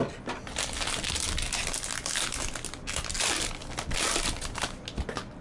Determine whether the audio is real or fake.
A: real